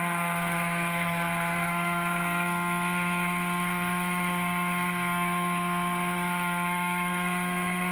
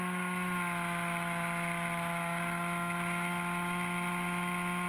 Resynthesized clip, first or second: first